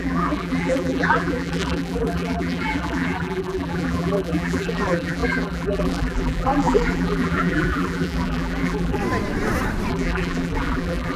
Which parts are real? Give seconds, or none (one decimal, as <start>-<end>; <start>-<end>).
9.0-9.9

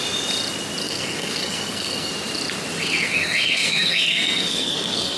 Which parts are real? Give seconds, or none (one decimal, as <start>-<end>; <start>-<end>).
0.0-0.8; 2.1-2.8